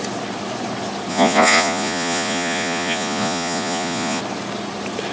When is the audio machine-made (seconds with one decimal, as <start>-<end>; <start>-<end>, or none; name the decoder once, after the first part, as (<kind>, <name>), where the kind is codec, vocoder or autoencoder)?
1.1-4.2 (vocoder, Vocos)